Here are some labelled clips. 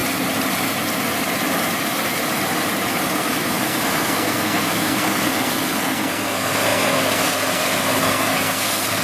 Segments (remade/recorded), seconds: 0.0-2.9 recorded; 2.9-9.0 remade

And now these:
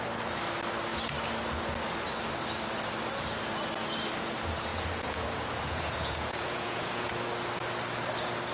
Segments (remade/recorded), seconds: 0.0-4.7 recorded; 4.7-7.1 remade; 7.1-8.5 recorded

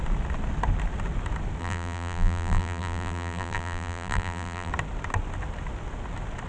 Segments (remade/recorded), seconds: 0.0-1.6 recorded; 1.6-4.7 remade; 4.7-6.5 recorded

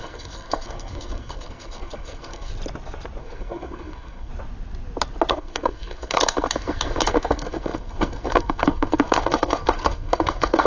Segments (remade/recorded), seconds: 0.0-2.5 remade; 2.5-3.2 recorded; 3.2-4.3 remade; 4.3-5.3 recorded; 5.3-10.7 remade

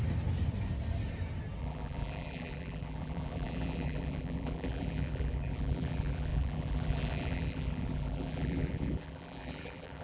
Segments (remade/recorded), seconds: 0.0-1.6 recorded; 1.6-10.0 remade

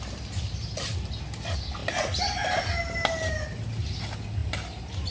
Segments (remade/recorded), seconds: 0.0-5.1 recorded

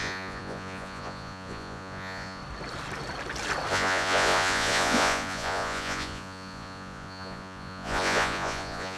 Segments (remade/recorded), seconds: 0.0-2.4 remade; 2.4-3.7 recorded; 3.7-9.0 remade